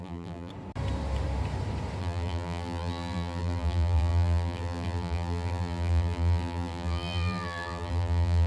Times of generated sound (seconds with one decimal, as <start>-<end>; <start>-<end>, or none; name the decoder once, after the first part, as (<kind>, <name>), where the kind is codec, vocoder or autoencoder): 0.0-0.5 (vocoder, BigVGAN v2); 2.0-8.5